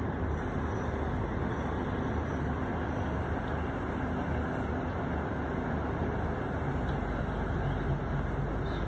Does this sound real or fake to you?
real